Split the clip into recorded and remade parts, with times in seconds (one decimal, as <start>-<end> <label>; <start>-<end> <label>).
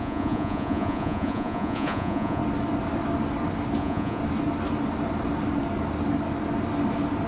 0.0-2.4 remade; 2.4-3.8 recorded; 3.8-4.2 remade; 4.2-7.3 recorded